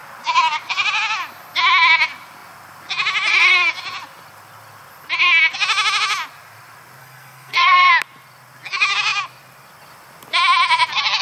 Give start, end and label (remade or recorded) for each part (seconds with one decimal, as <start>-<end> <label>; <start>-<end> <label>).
0.0-7.0 recorded; 7.0-7.9 remade; 7.9-11.2 recorded